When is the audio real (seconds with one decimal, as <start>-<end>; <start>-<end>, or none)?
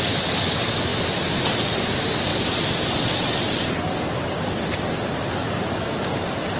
0.0-6.6